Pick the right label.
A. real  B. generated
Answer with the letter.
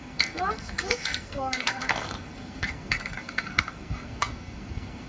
B